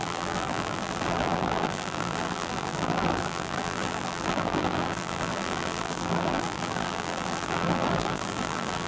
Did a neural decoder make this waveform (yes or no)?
yes